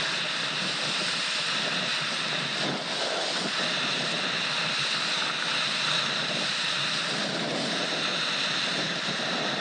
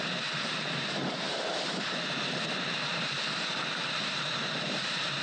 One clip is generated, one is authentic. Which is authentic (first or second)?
first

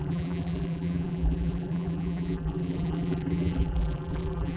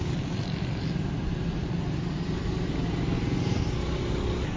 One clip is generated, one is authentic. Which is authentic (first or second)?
second